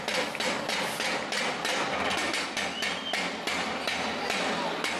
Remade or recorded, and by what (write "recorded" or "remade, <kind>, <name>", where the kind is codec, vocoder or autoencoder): recorded